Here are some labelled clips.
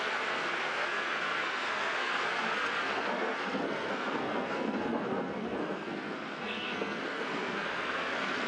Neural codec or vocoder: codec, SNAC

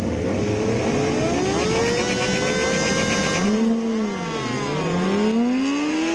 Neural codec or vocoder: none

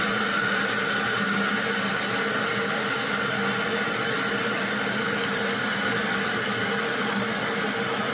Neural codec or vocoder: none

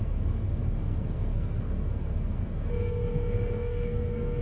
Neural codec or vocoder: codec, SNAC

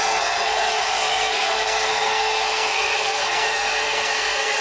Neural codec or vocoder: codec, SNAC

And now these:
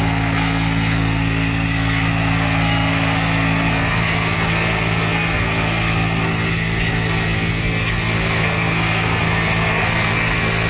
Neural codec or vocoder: codec, SNAC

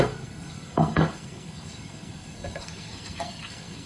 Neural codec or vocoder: codec, SNAC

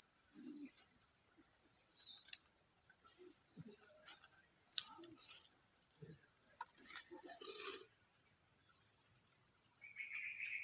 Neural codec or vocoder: none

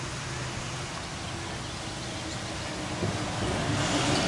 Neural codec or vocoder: none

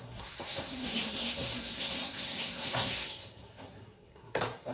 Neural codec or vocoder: codec, SNAC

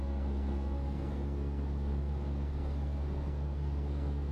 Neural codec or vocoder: codec, SNAC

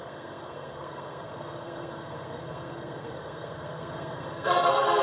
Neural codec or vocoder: codec, SNAC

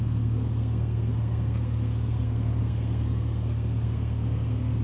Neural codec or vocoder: codec, SNAC